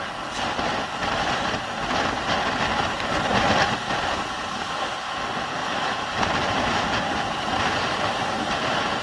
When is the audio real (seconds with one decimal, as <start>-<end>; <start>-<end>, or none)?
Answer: 0.0-5.6; 7.2-9.0